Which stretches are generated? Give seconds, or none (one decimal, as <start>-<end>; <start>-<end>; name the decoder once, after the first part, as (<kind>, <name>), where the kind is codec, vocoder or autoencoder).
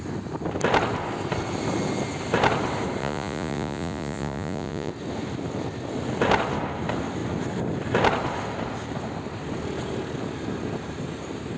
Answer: 3.0-4.9 (vocoder, Vocos)